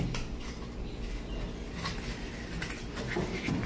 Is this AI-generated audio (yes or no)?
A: no